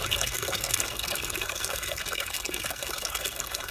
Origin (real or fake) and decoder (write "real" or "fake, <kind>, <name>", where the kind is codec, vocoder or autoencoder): fake, codec, SNAC